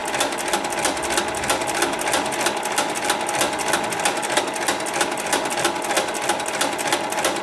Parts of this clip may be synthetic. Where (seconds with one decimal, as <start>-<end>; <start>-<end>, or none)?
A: none